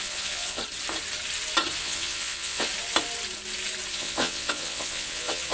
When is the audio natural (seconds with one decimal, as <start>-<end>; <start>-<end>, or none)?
0.6-1.8; 2.7-3.9